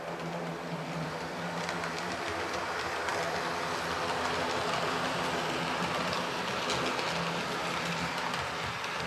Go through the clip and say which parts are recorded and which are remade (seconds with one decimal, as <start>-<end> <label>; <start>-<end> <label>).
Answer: 0.0-9.1 recorded